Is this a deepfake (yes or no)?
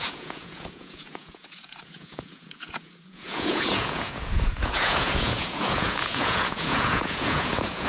yes